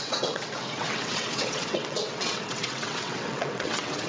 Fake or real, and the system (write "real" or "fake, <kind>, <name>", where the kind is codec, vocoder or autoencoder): fake, vocoder, WaveNeXt